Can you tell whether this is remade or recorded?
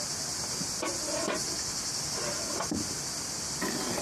recorded